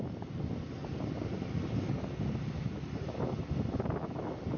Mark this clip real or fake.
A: real